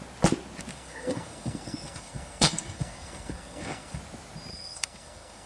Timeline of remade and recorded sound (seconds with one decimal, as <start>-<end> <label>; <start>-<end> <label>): 0.0-0.7 recorded; 0.7-4.0 remade; 4.0-4.5 recorded; 4.5-5.5 remade